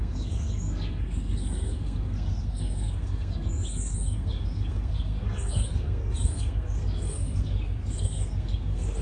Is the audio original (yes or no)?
no